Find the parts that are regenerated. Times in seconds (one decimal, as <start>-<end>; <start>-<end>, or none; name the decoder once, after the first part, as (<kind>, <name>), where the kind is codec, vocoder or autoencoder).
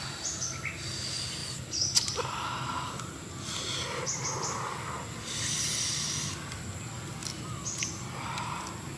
1.4-3.1 (vocoder, BigVGAN v2); 7.2-9.0